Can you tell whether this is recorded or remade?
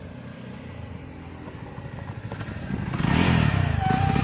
recorded